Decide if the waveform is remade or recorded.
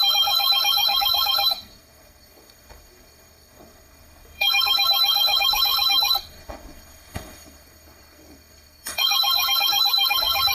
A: remade